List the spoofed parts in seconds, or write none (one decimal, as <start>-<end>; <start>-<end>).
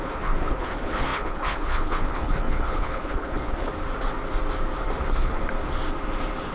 0.0-3.7; 5.0-5.4